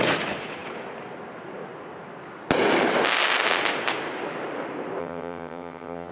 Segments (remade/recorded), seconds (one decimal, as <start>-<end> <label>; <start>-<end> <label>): 0.0-5.0 recorded; 5.0-6.1 remade